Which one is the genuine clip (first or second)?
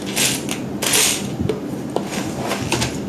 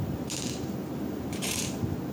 first